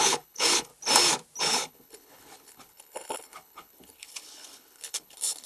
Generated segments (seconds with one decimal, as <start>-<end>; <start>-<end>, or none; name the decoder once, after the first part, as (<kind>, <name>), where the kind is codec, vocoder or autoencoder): 0.0-0.7 (codec, HILCodec); 1.4-5.5